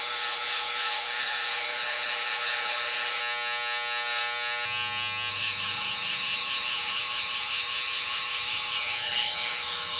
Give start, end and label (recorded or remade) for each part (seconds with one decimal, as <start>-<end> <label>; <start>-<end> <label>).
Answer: 0.0-3.2 remade; 3.2-5.3 recorded; 5.3-10.0 remade

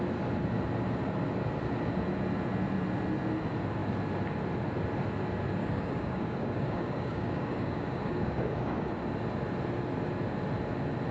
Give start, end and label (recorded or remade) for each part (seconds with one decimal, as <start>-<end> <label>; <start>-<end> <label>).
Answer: 0.0-5.6 recorded; 5.6-8.9 remade; 8.9-11.1 recorded

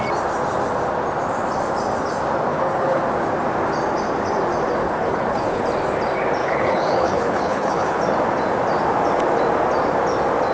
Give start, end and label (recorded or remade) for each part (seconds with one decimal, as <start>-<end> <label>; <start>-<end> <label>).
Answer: 0.0-2.5 recorded; 2.5-3.0 remade; 3.0-4.8 recorded; 4.8-5.6 remade; 5.6-6.4 recorded; 6.4-8.0 remade; 8.0-10.5 recorded

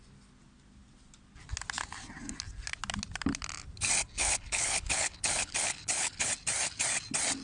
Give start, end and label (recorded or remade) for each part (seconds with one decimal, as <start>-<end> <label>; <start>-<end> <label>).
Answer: 0.0-4.2 recorded; 4.2-6.3 remade; 6.3-7.4 recorded

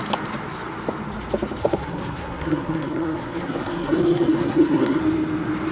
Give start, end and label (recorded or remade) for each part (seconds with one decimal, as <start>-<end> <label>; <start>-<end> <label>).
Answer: 0.0-1.6 recorded; 1.6-5.0 remade; 5.0-5.7 recorded

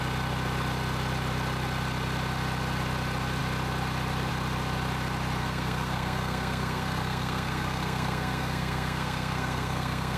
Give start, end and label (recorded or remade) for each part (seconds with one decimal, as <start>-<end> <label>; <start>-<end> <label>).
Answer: 0.0-5.4 recorded; 5.4-10.2 remade